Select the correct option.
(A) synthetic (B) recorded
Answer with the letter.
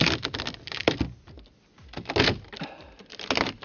B